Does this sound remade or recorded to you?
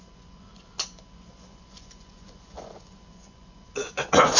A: remade